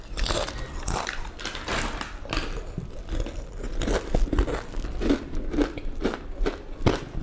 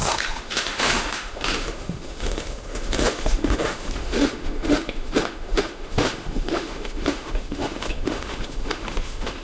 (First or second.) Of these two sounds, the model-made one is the second